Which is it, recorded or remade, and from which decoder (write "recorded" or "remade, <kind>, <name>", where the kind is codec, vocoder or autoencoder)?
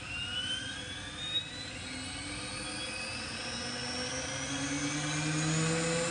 recorded